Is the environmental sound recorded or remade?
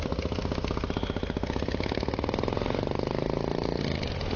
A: recorded